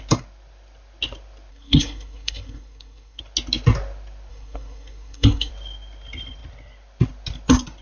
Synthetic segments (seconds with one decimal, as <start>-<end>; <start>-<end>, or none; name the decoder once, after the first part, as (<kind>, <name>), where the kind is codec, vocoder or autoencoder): 1.5-3.2 (codec, SNAC); 4.3-5.5